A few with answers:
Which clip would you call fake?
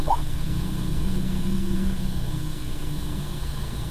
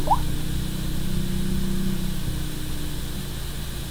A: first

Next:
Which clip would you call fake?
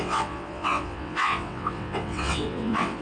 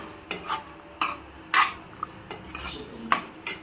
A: first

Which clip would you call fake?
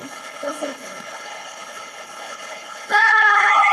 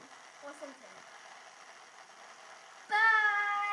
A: first